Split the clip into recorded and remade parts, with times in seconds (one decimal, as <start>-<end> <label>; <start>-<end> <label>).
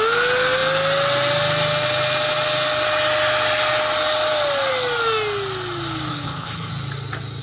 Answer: 0.0-6.1 recorded; 6.1-6.7 remade; 6.7-7.4 recorded